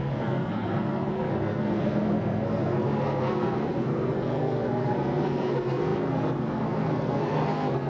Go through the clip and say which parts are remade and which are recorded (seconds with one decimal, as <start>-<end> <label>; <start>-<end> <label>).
0.0-7.9 remade